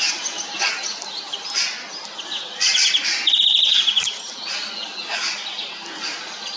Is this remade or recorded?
recorded